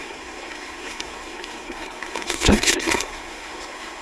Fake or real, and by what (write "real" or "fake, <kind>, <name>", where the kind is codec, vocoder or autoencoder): fake, codec, SNAC